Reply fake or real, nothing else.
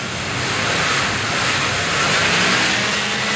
real